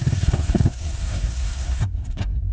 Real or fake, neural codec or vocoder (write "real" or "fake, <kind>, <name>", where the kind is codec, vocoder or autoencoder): fake, codec, SNAC